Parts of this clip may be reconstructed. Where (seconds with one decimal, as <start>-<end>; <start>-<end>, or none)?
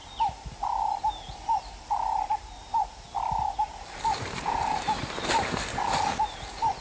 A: none